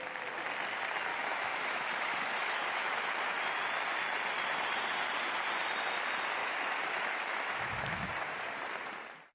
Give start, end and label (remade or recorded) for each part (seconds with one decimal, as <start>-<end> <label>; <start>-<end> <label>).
0.0-1.1 recorded; 1.1-3.4 remade; 3.4-6.4 recorded; 6.4-8.1 remade; 8.1-9.3 recorded